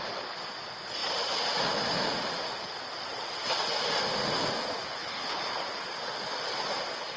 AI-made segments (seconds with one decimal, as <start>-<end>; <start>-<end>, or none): 4.9-5.4